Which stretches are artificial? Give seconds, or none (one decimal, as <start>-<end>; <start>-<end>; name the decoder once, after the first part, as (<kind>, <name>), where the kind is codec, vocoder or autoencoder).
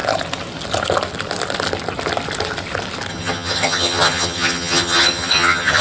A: 3.1-5.8 (vocoder, HiFi-GAN)